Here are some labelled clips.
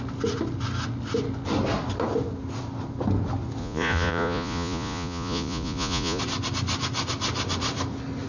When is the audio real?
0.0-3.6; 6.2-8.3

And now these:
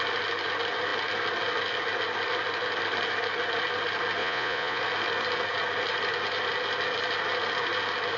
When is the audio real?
0.0-4.2; 4.8-8.2

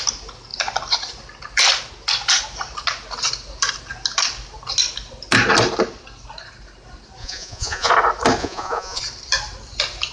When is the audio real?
0.0-7.2; 7.9-8.4; 9.0-10.1

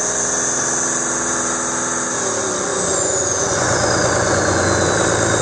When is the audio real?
0.0-2.7; 4.9-5.4

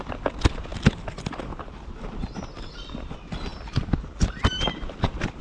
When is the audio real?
0.0-5.4

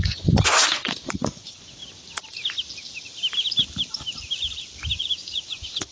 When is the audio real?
1.8-5.0

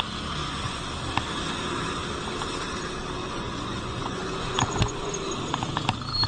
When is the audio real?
0.0-0.4; 0.9-3.2; 5.1-6.3

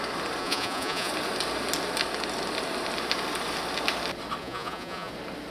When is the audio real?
0.0-0.4; 1.1-4.4; 5.1-5.5